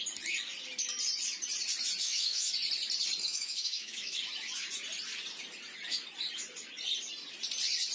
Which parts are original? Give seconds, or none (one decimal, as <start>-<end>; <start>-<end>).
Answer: 0.0-2.0; 2.5-3.2; 4.2-7.9